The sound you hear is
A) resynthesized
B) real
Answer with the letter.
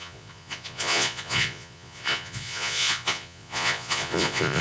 A